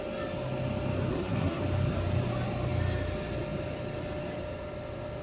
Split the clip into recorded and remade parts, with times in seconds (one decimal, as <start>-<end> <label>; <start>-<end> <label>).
0.0-1.1 recorded; 1.1-1.6 remade; 1.6-5.2 recorded